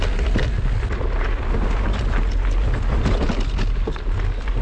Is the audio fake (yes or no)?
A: no